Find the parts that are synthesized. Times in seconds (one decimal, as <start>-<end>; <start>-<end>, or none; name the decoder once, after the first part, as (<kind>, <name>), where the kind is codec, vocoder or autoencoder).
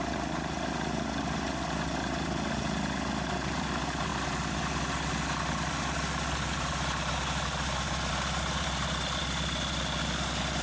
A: none